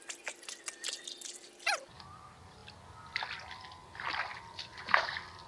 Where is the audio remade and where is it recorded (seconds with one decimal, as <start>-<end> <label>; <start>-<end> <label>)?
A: 0.0-5.5 recorded